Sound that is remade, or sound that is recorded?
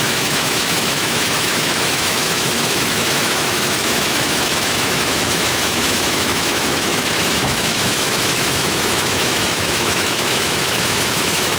remade